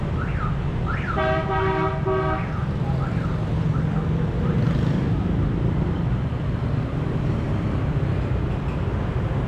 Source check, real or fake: real